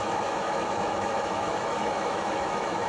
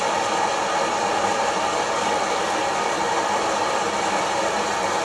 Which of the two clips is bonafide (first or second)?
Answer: second